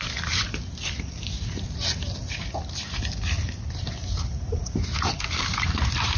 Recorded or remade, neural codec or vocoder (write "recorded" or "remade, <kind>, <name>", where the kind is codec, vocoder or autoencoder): remade, vocoder, BigVGAN v2